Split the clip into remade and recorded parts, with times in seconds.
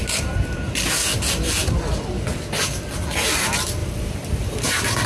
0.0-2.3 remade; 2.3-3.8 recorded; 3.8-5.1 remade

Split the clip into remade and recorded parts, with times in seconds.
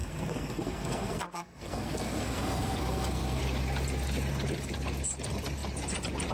0.0-3.4 remade; 3.4-6.3 recorded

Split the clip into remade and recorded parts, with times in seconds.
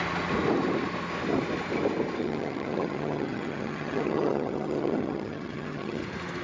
0.0-2.2 recorded; 2.2-6.0 remade; 6.0-6.4 recorded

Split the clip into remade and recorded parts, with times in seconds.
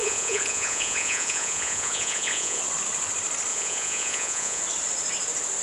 0.0-2.6 remade; 2.6-3.5 recorded; 3.5-4.6 remade; 4.6-5.6 recorded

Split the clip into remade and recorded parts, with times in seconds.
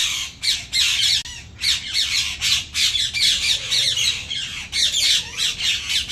0.0-6.1 recorded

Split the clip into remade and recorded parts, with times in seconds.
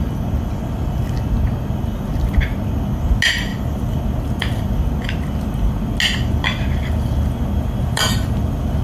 0.0-7.8 recorded; 7.8-8.4 remade; 8.4-8.8 recorded